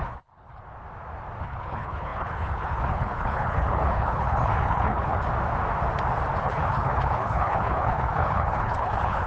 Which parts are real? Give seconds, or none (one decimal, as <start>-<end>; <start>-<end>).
0.6-1.4; 5.3-6.4